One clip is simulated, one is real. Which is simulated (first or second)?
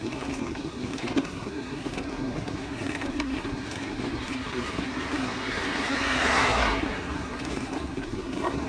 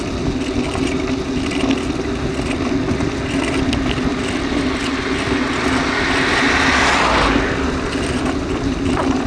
first